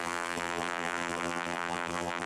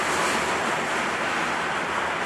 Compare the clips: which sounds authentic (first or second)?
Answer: second